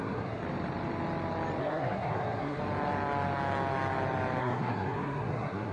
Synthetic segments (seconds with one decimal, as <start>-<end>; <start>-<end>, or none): 0.0-0.4; 1.6-2.6; 4.4-5.7